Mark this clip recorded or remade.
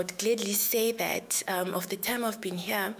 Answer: remade